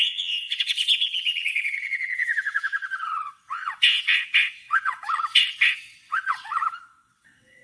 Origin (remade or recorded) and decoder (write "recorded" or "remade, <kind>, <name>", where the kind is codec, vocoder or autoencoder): remade, vocoder, WaveNeXt